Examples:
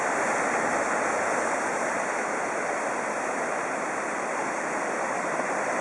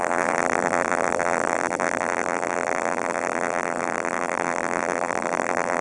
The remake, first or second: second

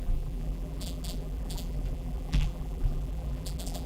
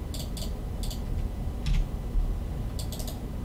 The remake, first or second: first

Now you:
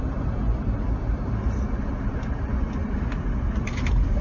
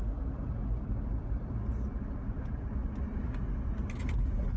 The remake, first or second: first